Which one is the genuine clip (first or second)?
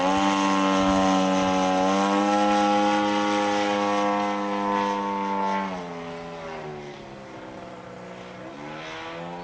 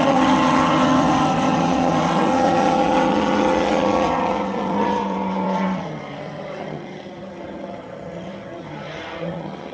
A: first